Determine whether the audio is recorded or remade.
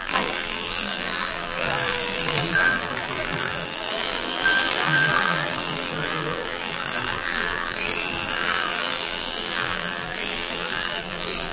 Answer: remade